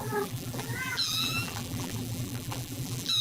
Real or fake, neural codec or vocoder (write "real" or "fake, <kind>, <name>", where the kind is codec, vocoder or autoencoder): fake, vocoder, BigVGAN v2